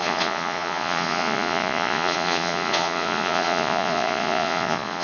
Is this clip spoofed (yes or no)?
yes